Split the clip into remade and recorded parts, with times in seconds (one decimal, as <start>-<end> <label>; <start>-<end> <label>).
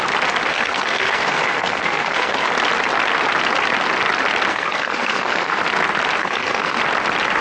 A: 0.0-0.5 recorded; 0.5-2.5 remade; 2.5-4.5 recorded; 4.5-5.6 remade; 5.6-6.2 recorded; 6.2-6.8 remade; 6.8-7.4 recorded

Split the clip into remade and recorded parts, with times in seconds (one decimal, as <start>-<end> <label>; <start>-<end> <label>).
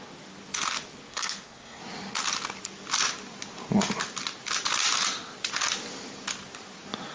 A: 0.0-1.1 recorded; 1.1-1.8 remade; 1.8-7.1 recorded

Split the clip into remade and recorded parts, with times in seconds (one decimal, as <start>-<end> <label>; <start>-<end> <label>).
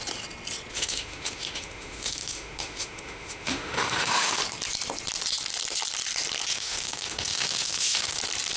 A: 0.0-0.7 recorded; 0.7-4.4 remade; 4.4-6.5 recorded; 6.5-8.2 remade; 8.2-8.6 recorded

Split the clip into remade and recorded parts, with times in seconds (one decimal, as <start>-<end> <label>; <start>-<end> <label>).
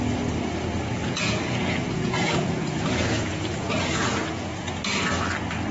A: 0.0-1.0 recorded; 1.0-4.4 remade; 4.4-5.7 recorded